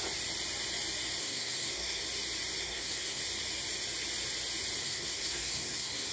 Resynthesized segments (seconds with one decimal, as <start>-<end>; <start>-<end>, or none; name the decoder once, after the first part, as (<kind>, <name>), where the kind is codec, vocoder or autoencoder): 1.2-2.0 (codec, SNAC); 2.6-3.2; 4.8-6.1